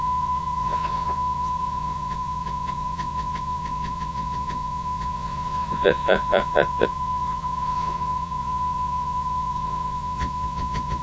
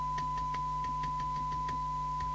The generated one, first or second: first